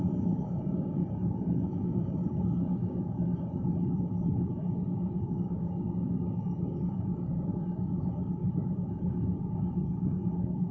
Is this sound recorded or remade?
remade